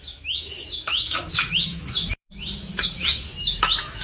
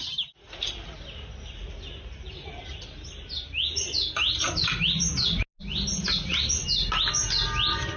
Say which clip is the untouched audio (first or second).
second